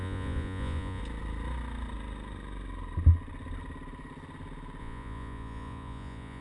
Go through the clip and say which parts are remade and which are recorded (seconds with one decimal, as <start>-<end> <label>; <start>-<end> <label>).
0.0-1.0 remade; 1.0-4.8 recorded; 4.8-6.4 remade